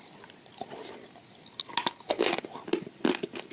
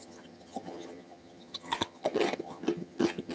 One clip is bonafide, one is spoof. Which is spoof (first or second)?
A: second